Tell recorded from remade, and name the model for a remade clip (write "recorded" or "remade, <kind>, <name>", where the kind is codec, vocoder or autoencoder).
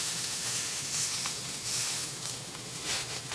remade, autoencoder, DAC-VAE